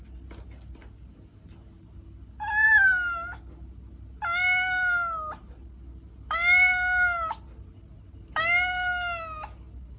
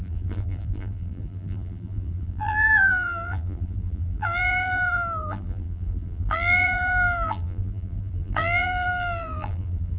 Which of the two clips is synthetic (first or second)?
second